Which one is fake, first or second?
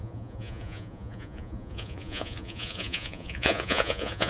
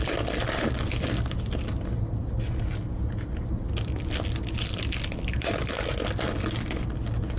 first